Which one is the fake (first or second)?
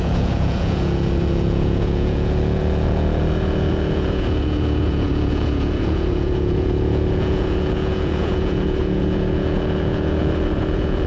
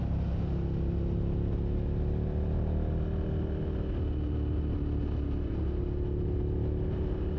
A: first